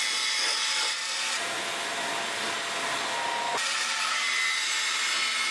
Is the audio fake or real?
real